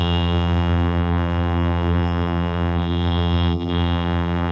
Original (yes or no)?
no